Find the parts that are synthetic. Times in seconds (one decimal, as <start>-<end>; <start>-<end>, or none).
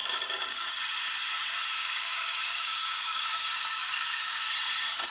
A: 0.0-0.7; 1.8-4.5